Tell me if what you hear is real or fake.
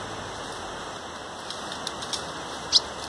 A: real